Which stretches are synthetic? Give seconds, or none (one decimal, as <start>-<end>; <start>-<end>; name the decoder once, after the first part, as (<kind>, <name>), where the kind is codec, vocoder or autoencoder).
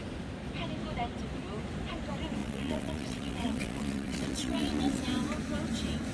2.4-5.0 (vocoder, WaveNeXt)